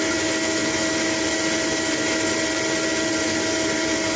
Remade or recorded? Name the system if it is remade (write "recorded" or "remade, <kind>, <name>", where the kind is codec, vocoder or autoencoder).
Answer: recorded